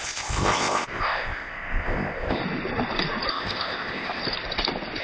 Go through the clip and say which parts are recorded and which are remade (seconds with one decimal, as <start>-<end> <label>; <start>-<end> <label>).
0.0-2.4 remade; 2.4-3.3 recorded; 3.3-4.2 remade; 4.2-5.0 recorded